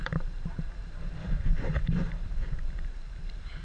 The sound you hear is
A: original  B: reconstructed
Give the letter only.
B